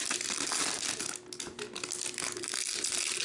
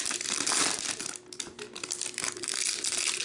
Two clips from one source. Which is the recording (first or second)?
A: first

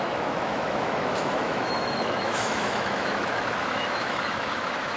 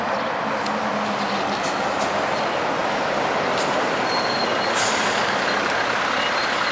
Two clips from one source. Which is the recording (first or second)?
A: second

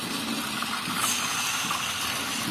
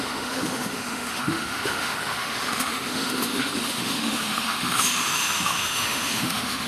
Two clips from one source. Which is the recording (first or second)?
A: first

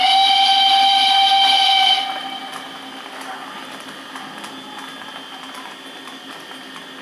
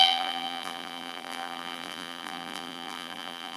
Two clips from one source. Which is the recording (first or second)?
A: first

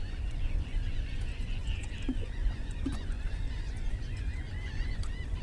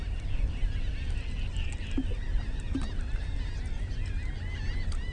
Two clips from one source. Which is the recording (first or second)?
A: second